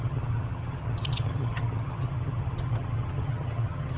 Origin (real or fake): fake